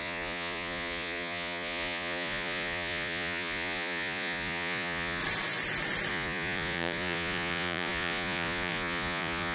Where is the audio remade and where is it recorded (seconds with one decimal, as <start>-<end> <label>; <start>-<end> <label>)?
0.0-5.2 remade; 5.2-6.1 recorded; 6.1-9.5 remade